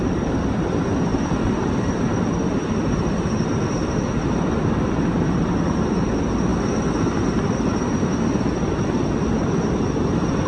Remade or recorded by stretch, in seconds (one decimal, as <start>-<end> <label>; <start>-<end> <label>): 0.0-1.1 recorded; 1.1-3.9 remade; 3.9-10.5 recorded